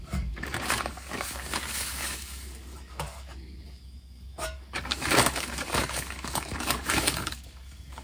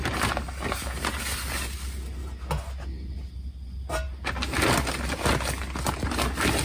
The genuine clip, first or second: second